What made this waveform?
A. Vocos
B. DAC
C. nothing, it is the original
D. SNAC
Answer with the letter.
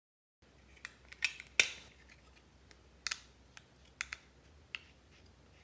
C